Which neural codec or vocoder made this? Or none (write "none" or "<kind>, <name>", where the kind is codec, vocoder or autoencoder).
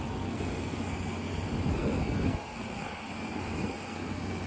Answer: codec, SNAC